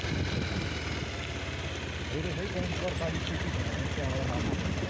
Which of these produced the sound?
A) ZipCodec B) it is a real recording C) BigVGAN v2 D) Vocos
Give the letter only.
B